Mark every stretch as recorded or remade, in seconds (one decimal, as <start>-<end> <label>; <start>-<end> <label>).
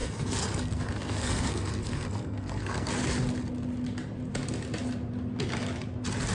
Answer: 0.0-2.9 remade; 2.9-6.3 recorded